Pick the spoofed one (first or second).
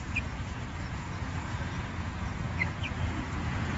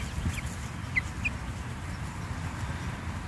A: first